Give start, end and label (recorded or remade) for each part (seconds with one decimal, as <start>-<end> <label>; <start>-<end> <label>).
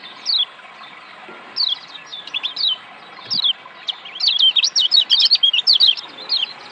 0.0-6.7 recorded